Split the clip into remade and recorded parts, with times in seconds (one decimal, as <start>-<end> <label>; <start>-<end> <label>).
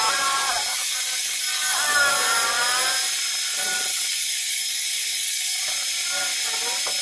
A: 0.0-0.7 recorded; 0.7-2.1 remade; 2.1-3.9 recorded; 3.9-5.6 remade; 5.6-7.0 recorded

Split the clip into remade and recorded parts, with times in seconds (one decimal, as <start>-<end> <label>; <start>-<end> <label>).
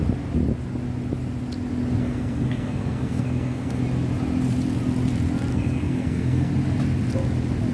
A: 0.0-2.0 recorded; 2.0-3.8 remade; 3.8-5.5 recorded; 5.5-6.5 remade; 6.5-7.7 recorded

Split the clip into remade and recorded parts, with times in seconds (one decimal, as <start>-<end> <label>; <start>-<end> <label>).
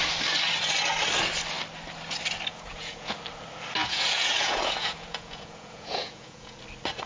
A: 0.0-2.5 recorded; 2.5-3.2 remade; 3.2-3.8 recorded; 3.8-6.6 remade; 6.6-7.1 recorded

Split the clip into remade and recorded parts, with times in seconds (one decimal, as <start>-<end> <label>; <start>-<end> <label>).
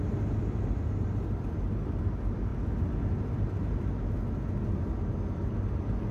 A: 0.0-6.1 recorded